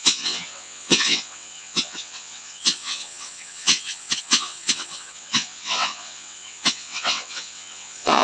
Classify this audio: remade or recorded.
remade